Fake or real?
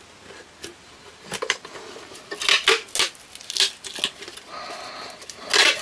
real